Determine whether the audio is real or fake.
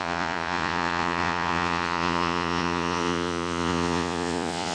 fake